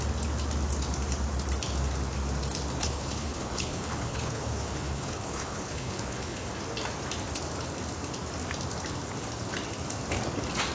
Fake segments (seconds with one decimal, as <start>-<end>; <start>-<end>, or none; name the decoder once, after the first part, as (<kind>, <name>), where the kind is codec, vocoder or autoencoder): 2.8-6.5 (codec, HILCodec)